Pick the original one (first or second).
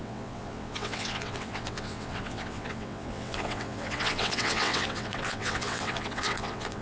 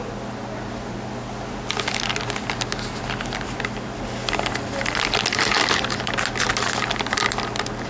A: second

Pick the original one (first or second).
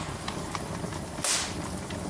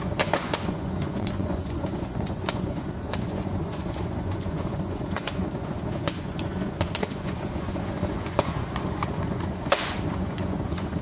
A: first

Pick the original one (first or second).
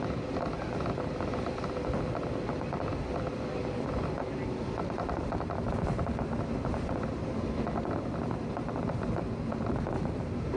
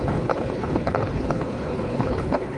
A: first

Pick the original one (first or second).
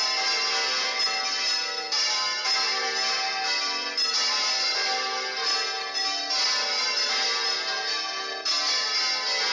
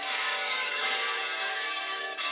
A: first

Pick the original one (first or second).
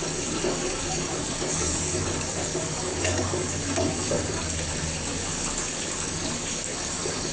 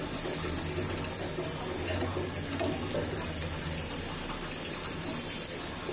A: second